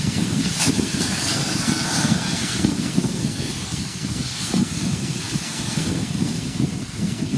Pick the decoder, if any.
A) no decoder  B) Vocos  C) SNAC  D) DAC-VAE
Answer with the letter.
C